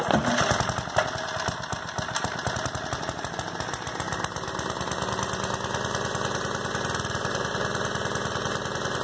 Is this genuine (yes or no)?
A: yes